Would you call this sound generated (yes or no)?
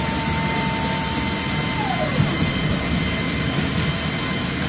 no